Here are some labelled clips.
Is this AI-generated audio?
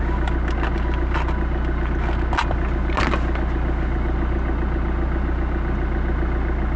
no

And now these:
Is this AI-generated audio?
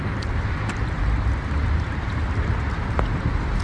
no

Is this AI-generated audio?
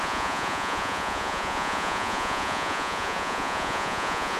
yes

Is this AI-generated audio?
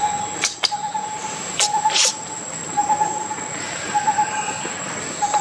no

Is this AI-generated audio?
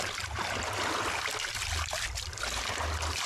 no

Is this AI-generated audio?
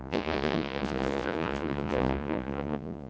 yes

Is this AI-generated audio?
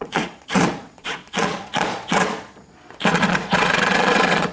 yes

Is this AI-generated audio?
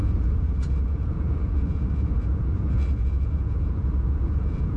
yes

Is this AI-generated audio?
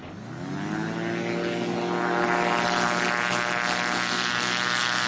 no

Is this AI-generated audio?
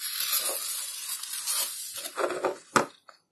no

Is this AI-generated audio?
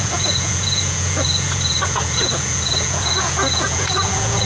yes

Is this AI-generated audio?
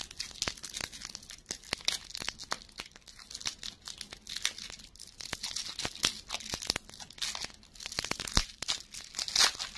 no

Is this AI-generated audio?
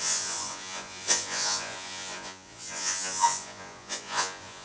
yes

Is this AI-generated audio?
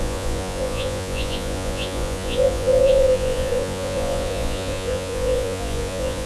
yes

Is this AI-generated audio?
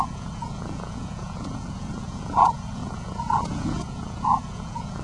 yes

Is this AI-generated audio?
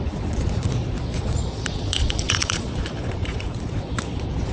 yes